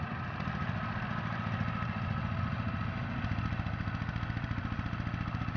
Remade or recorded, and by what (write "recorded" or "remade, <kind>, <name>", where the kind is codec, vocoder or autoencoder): recorded